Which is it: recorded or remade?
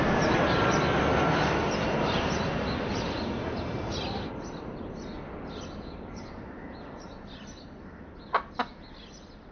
recorded